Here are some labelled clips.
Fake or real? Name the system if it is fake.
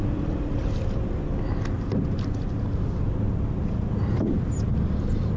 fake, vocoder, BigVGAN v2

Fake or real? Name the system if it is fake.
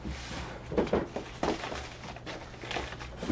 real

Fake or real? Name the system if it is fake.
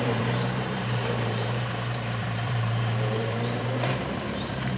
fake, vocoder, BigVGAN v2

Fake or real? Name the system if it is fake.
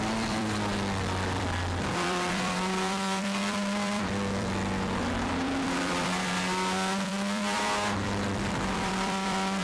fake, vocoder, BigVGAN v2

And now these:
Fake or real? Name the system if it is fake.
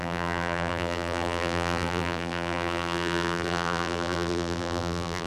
fake, vocoder, BigVGAN v2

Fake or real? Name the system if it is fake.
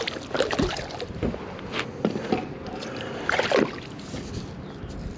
real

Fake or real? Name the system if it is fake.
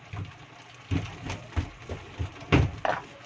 real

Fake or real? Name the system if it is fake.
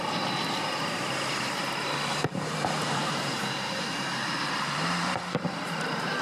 fake, vocoder, BigVGAN v2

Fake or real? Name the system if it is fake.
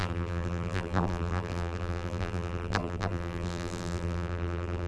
fake, vocoder, BigVGAN v2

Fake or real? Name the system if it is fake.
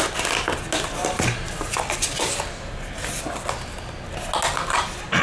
real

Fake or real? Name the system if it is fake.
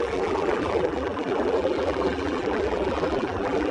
fake, vocoder, BigVGAN v2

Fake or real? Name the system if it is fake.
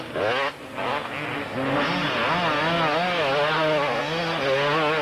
real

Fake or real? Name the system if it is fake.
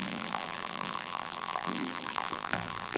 fake, vocoder, BigVGAN v2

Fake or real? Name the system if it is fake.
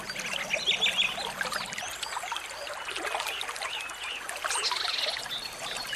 real